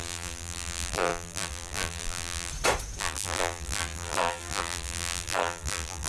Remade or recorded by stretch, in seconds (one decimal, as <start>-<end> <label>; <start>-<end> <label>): 0.0-2.5 remade; 2.5-3.0 recorded; 3.0-6.1 remade